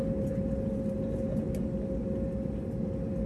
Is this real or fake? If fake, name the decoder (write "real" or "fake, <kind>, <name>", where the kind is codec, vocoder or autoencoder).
real